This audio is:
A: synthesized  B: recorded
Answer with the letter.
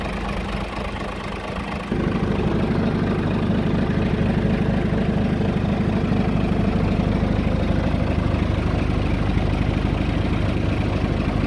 B